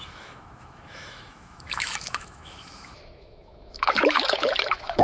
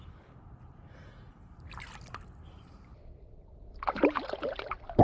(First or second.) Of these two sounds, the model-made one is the first